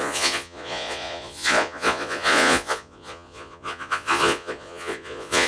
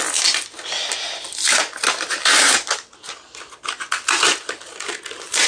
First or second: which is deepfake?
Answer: first